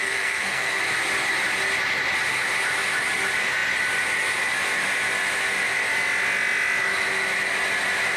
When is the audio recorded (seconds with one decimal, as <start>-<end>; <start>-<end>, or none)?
0.8-8.2